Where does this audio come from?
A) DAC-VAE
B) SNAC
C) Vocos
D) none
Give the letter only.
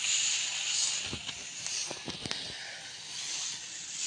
D